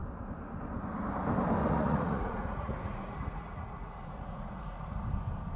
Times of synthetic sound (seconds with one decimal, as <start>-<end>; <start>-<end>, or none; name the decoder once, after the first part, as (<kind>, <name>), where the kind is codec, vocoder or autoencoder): 1.6-4.8 (vocoder, Vocos)